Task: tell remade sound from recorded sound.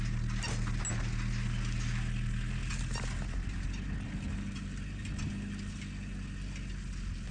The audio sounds recorded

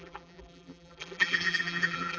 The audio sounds remade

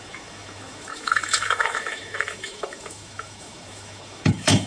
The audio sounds remade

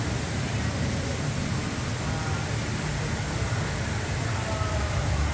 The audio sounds recorded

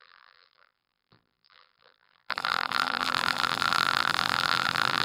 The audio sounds remade